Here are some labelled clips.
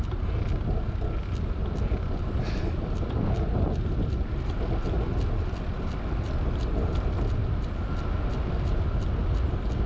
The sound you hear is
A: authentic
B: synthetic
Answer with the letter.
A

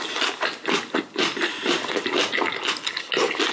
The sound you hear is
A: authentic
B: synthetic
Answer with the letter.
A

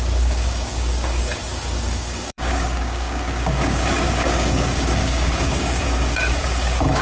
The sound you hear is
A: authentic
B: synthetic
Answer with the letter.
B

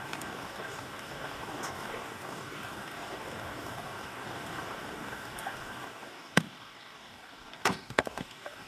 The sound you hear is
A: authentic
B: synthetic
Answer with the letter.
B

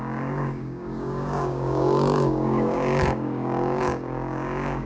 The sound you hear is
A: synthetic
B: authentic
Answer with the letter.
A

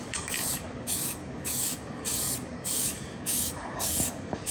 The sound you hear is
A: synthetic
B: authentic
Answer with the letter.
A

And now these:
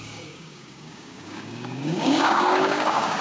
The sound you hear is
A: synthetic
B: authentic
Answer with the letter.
A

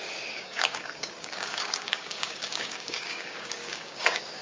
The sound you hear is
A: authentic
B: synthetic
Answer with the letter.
B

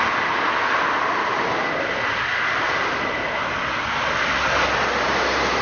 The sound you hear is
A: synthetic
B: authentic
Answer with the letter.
B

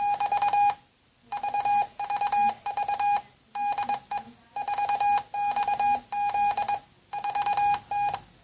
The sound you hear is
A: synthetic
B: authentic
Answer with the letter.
B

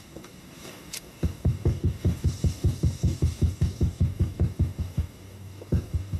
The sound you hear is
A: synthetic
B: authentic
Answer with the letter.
A